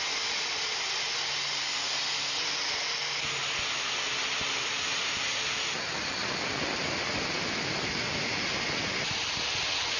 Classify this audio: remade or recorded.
recorded